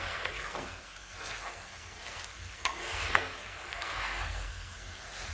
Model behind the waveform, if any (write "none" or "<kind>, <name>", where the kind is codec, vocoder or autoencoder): codec, SNAC